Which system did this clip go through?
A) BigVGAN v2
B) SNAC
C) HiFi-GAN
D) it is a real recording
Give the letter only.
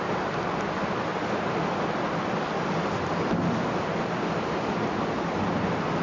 D